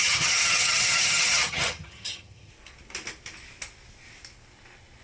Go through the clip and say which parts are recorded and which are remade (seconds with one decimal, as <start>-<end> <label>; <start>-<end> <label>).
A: 0.0-2.5 remade; 2.5-5.0 recorded